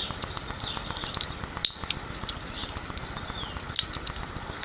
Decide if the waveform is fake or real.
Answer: real